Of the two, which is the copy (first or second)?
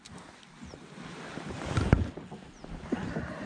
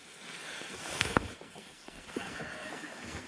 second